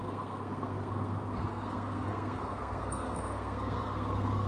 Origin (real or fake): fake